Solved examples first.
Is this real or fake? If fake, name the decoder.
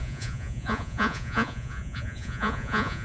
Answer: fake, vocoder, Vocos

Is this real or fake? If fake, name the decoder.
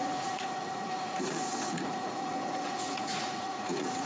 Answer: fake, vocoder, Vocos